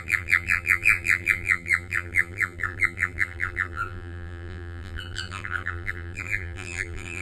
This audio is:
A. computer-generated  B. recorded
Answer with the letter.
A